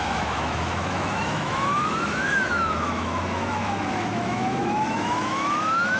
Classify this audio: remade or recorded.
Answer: remade